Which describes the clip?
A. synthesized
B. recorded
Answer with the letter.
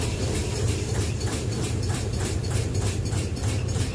A